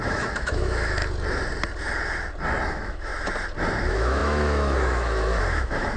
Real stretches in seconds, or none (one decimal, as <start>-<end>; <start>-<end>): 1.0-2.7; 3.1-3.8